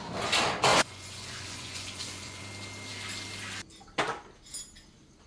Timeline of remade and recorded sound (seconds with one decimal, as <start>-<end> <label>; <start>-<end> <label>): 0.0-0.7 recorded; 0.7-2.4 remade; 2.4-5.3 recorded